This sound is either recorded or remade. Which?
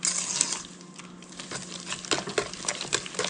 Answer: recorded